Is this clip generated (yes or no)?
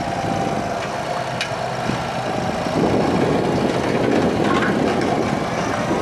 no